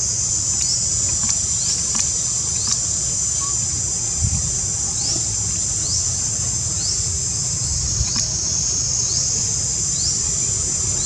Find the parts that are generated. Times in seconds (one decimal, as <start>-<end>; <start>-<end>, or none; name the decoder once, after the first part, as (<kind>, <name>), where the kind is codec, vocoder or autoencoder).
7.7-9.9 (vocoder, BigVGAN v2)